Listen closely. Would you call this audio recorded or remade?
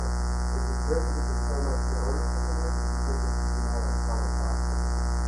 recorded